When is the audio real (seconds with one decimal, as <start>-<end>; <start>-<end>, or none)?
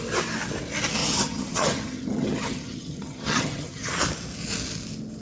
0.0-1.0; 3.9-5.2